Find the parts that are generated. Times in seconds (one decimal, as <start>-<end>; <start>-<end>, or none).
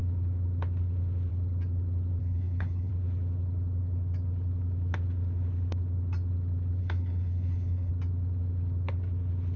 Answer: 2.2-2.9; 6.8-7.9